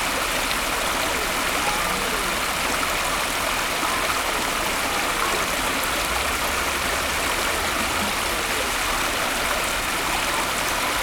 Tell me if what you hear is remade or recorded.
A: recorded